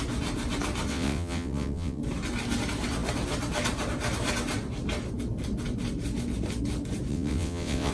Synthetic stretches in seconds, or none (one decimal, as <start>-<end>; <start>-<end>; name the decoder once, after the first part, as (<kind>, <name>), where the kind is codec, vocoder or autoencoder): 0.9-2.0 (vocoder, WaveNeXt); 7.1-7.9